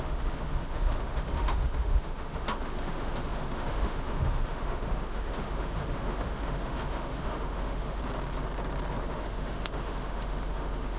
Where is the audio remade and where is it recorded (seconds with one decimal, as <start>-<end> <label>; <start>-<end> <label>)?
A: 0.0-8.0 remade; 8.0-9.0 recorded; 9.0-11.0 remade